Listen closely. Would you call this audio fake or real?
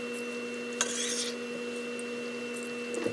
real